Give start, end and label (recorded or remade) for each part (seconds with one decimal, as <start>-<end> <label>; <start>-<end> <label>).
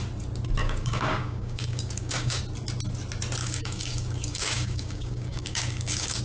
0.0-0.6 recorded; 0.6-2.4 remade; 2.4-3.4 recorded; 3.4-6.2 remade